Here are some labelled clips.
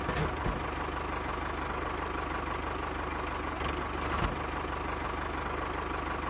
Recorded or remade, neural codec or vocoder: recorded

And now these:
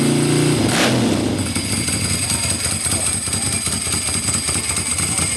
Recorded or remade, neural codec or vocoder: recorded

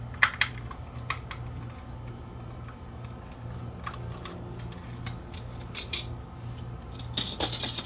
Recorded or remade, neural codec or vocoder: recorded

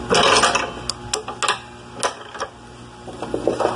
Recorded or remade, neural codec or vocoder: recorded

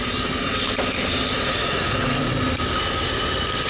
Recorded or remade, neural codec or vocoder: recorded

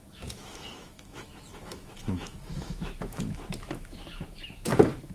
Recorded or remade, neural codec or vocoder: remade, autoencoder, DAC-VAE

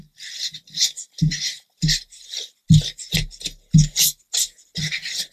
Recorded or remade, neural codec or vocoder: recorded